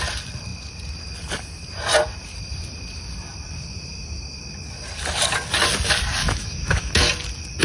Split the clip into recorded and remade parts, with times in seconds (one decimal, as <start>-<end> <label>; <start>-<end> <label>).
0.0-6.2 recorded; 6.2-7.1 remade; 7.1-7.6 recorded